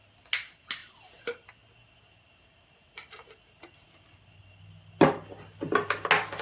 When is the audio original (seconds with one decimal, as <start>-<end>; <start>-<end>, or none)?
0.0-6.4